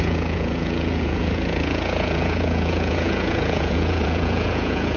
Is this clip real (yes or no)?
no